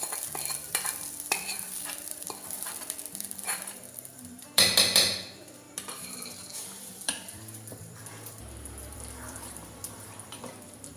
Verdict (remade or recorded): remade